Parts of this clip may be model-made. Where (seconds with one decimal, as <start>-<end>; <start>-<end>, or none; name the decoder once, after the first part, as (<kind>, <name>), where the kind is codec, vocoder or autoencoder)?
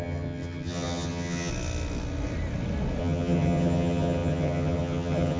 0.0-1.5 (vocoder, HiFi-GAN); 3.0-5.4